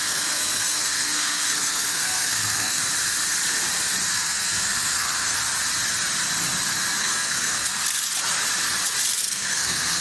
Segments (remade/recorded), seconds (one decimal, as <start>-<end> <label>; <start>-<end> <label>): 0.0-2.8 remade; 2.8-4.1 recorded; 4.1-5.4 remade; 5.4-7.0 recorded; 7.0-7.8 remade; 7.8-9.2 recorded; 9.2-10.0 remade